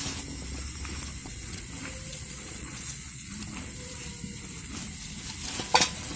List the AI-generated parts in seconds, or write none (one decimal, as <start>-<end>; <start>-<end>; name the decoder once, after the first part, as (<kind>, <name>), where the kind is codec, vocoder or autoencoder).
1.2-1.7 (vocoder, Vocos); 2.1-3.3